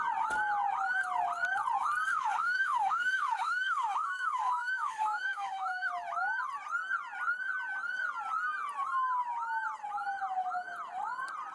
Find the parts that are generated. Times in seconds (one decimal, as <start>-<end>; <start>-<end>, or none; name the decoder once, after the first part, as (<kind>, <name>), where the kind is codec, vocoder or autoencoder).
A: 2.1-5.9 (autoencoder, DAC-VAE)